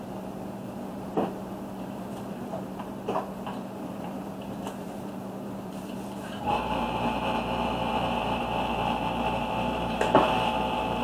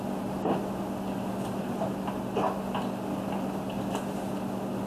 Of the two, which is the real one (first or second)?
second